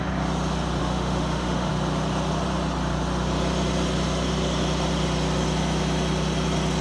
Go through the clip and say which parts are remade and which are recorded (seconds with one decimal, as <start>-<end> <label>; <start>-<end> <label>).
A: 0.0-0.8 recorded; 0.8-1.7 remade; 1.7-6.8 recorded